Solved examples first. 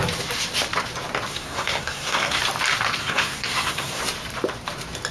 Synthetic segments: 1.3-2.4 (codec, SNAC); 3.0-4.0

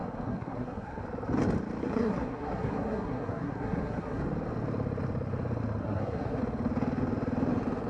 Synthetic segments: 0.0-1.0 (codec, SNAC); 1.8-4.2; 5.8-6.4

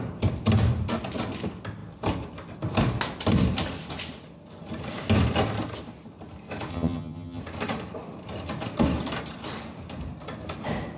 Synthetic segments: 6.7-7.4 (vocoder, HiFi-GAN)

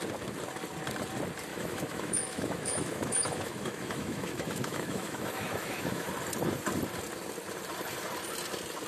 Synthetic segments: 1.5-6.1 (autoencoder, DAC-VAE)

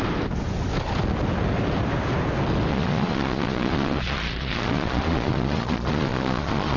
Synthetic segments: 2.7-6.8 (vocoder, Vocos)

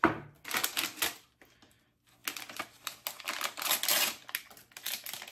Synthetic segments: none

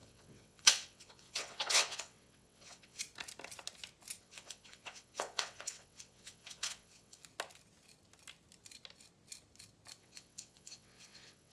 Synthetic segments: 0.0-3.0 (vocoder, WaveNeXt); 4.2-7.2; 10.0-11.5